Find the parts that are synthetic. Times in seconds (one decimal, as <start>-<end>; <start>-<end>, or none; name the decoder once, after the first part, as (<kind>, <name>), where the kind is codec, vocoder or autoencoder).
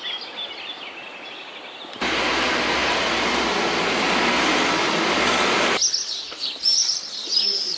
0.0-1.0 (vocoder, BigVGAN v2); 2.3-7.8